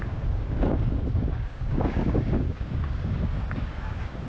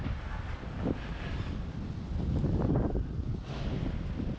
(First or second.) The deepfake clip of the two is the first